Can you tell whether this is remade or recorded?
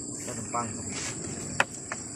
remade